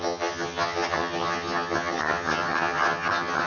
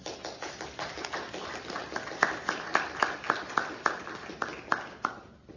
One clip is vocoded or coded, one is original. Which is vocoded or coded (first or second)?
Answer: first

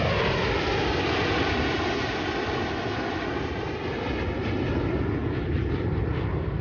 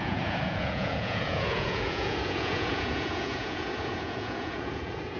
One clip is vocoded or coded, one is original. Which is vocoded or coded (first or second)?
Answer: second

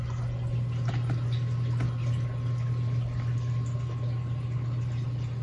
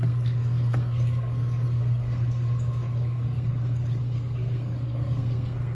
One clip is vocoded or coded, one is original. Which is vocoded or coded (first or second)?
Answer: second